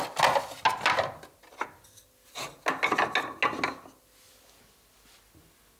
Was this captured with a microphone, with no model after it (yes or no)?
yes